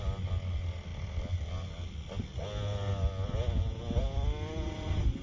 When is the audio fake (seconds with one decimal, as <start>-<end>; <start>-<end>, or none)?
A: none